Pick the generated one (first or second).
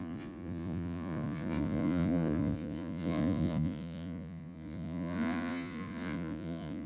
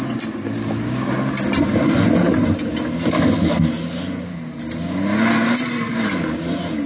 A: first